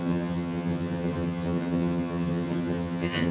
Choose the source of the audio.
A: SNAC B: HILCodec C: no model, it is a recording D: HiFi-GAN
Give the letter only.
D